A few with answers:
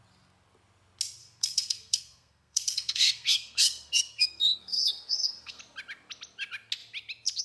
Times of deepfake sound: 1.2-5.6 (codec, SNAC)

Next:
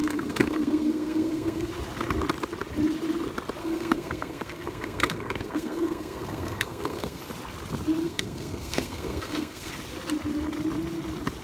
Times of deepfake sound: 0.0-1.7 (codec, SNAC); 3.6-7.2; 8.0-9.7

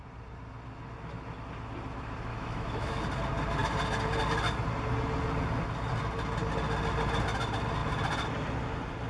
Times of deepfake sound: 2.3-3.0 (autoencoder, DAC-VAE)

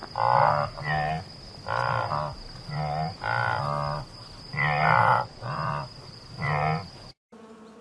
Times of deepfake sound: 5.0-5.7 (vocoder, Vocos)

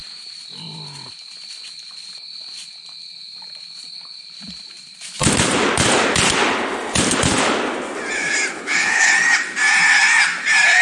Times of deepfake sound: 8.5-9.1 (codec, HILCodec)